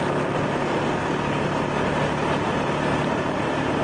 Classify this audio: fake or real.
real